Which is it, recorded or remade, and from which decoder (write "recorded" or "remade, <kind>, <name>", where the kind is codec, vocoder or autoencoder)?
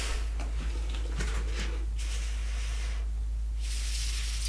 recorded